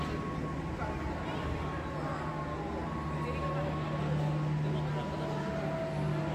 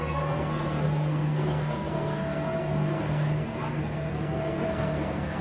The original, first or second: first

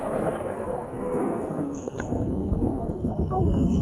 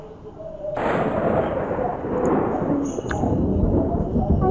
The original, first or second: second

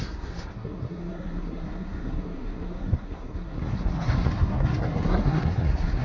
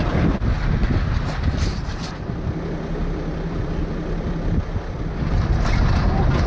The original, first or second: second